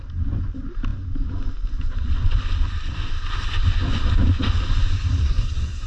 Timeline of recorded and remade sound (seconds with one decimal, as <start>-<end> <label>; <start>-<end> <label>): 0.0-5.2 recorded; 5.2-5.9 remade

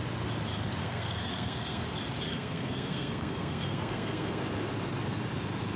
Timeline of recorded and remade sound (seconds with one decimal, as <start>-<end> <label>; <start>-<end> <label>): 0.0-0.8 recorded; 0.8-1.8 remade; 1.8-2.3 recorded; 2.3-4.4 remade; 4.4-5.8 recorded

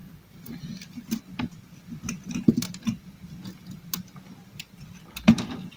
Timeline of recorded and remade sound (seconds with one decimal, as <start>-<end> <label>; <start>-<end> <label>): 0.0-1.1 remade; 1.1-5.8 recorded

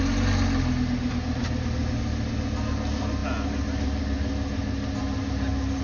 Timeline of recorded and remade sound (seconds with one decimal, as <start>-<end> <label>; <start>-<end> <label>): 0.0-5.8 recorded

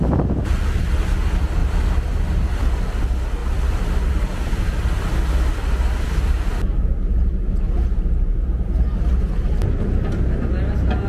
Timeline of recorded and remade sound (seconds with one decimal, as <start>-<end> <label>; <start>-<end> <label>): 0.0-11.1 recorded

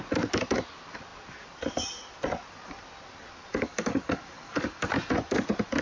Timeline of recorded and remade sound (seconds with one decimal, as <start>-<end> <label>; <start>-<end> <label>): 0.0-3.5 recorded; 3.5-4.9 remade; 4.9-5.8 recorded

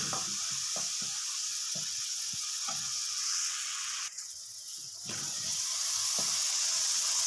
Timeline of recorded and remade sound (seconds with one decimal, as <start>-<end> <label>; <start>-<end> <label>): 0.0-1.5 recorded; 1.5-5.6 remade; 5.6-6.4 recorded; 6.4-7.3 remade